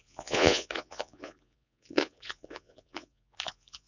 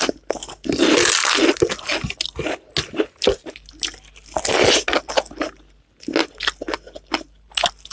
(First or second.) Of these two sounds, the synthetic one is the first